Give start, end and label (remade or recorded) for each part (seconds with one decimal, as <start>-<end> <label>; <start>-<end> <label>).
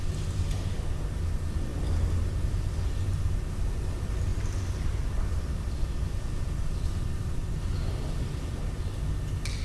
0.0-4.3 recorded; 4.3-8.8 remade; 8.8-9.6 recorded